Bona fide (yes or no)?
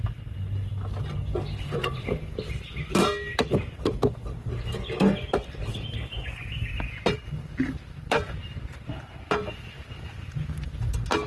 yes